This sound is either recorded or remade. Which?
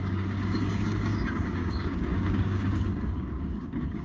remade